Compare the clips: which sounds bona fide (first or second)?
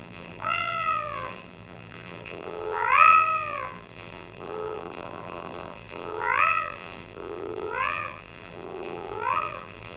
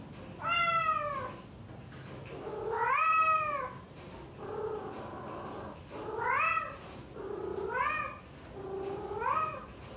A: second